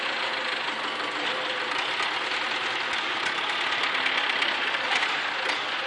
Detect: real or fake real